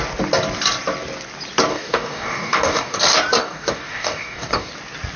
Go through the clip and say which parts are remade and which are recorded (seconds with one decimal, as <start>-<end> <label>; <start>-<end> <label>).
0.0-1.7 recorded; 1.7-3.0 remade; 3.0-3.4 recorded; 3.4-4.7 remade; 4.7-5.2 recorded